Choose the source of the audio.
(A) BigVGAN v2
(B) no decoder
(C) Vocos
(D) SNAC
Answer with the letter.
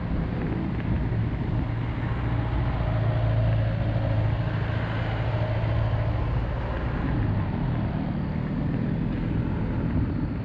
B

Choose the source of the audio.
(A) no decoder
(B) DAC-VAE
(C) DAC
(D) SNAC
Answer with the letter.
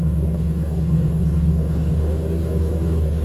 C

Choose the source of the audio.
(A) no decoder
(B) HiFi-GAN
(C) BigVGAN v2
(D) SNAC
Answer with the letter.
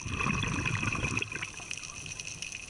C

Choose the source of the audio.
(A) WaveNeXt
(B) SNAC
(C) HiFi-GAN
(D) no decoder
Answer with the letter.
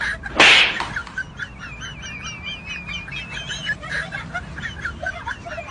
D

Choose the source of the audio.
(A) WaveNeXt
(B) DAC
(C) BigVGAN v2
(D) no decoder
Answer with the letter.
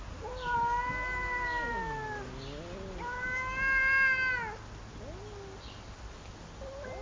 D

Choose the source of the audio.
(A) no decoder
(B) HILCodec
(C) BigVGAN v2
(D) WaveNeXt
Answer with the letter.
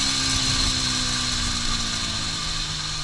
A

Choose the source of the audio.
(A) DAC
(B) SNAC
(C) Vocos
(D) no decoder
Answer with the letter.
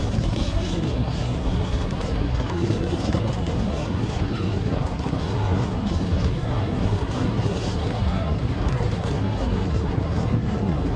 B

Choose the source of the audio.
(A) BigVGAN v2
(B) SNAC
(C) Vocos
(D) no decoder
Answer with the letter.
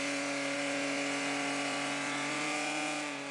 C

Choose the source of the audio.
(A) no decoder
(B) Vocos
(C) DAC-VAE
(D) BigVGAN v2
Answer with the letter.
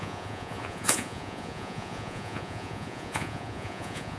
B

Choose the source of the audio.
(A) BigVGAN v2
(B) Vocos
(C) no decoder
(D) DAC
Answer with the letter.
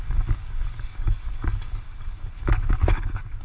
D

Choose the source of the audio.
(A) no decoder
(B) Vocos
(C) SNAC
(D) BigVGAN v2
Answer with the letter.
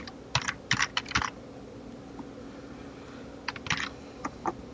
A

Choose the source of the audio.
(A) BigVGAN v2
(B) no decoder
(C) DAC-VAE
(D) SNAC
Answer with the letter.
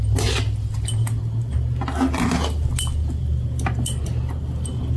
B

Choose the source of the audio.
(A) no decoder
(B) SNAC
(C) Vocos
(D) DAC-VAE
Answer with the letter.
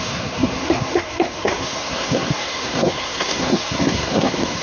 B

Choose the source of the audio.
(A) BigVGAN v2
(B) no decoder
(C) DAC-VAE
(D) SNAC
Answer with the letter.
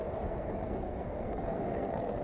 D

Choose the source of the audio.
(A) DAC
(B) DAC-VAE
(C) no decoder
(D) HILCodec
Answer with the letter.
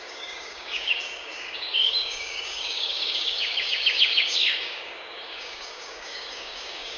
A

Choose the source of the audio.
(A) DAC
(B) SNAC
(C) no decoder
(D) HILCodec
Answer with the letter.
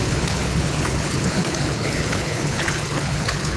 D